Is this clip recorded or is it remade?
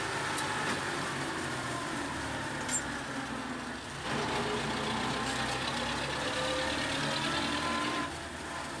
recorded